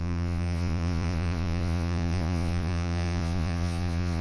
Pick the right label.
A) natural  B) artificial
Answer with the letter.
B